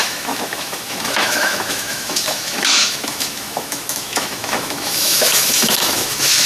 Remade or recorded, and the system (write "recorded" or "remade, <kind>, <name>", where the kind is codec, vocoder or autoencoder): remade, autoencoder, DAC-VAE